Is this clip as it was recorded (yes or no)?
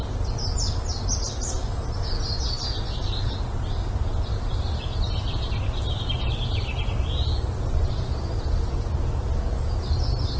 yes